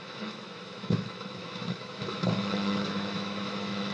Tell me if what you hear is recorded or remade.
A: remade